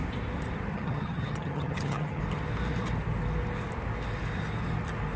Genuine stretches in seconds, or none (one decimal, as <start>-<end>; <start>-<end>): 0.0-0.7; 2.2-5.2